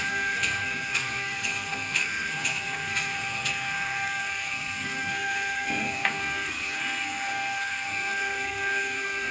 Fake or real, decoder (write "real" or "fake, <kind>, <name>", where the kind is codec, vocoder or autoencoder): fake, codec, SNAC